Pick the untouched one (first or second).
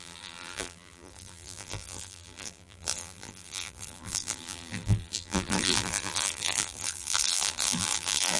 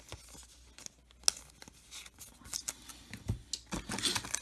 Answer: second